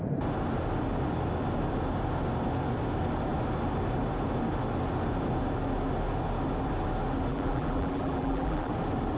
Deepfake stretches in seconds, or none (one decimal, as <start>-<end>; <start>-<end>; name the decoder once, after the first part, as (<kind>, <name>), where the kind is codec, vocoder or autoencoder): 7.3-8.7 (vocoder, BigVGAN v2)